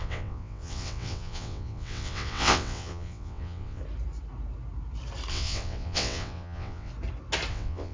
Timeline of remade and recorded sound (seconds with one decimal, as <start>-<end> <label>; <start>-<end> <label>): 0.0-3.8 remade; 3.8-5.3 recorded; 5.3-6.9 remade; 6.9-7.5 recorded; 7.5-7.9 remade

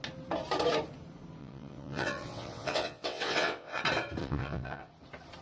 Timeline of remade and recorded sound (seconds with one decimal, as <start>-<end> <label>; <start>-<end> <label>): 0.0-1.4 recorded; 1.4-3.8 remade; 3.8-4.2 recorded; 4.2-4.9 remade; 4.9-5.4 recorded

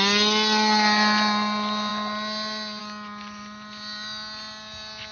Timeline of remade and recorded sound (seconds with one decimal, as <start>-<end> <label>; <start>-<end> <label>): 0.0-5.1 recorded